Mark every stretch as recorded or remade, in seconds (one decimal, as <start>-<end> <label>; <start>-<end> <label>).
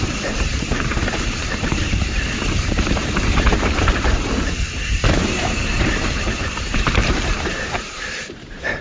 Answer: 0.0-8.8 remade